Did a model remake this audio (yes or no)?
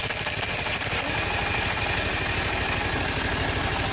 no